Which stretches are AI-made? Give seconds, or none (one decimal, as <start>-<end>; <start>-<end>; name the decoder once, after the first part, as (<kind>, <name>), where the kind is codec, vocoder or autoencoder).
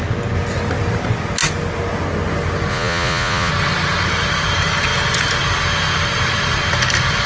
2.7-3.5 (vocoder, Vocos)